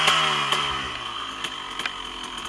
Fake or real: real